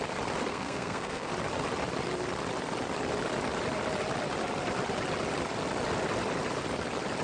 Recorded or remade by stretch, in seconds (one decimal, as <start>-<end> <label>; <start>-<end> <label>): 0.0-0.5 recorded; 0.5-1.3 remade; 1.3-7.2 recorded